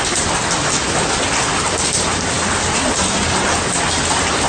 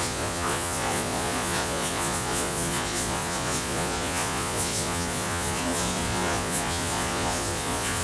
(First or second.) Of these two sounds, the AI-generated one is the second